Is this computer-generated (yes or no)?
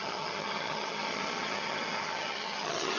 yes